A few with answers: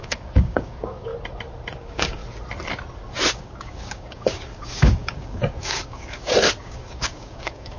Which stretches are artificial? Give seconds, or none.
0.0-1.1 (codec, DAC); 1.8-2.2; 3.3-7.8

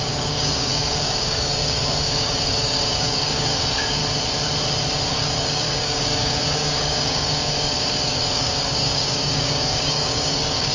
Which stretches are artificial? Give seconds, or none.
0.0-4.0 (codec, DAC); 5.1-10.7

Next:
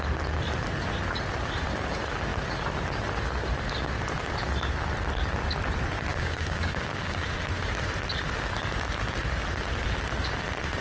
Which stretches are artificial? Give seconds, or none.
6.1-7.4 (codec, DAC)

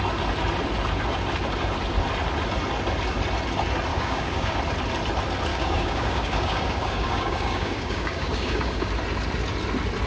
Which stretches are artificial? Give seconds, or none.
3.9-4.6 (codec, DAC); 5.5-8.9

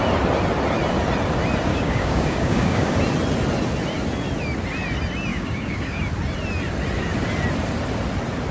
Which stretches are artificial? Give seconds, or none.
1.7-2.9 (codec, DAC); 5.3-6.0